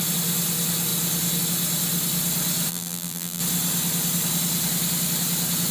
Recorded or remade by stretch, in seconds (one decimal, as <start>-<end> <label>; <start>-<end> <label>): 0.0-2.7 recorded; 2.7-3.4 remade; 3.4-5.7 recorded